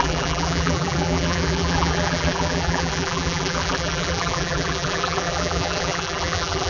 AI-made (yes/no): yes